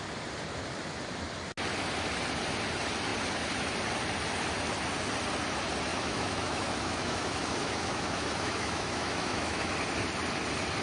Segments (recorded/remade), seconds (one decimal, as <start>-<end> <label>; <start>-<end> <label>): 0.0-5.9 recorded; 5.9-9.7 remade; 9.7-10.8 recorded

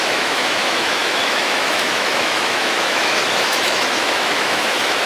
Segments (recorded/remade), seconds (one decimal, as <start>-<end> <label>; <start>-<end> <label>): 0.0-5.1 remade

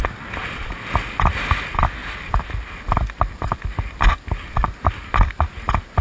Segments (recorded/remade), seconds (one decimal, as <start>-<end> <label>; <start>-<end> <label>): 0.0-6.0 recorded

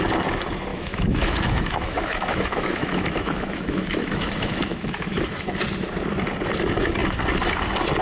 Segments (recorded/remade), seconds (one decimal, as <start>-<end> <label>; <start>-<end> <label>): 0.0-0.7 recorded; 0.7-5.5 remade; 5.5-8.0 recorded